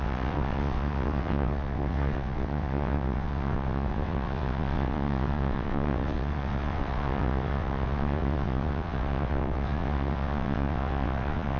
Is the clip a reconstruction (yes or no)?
yes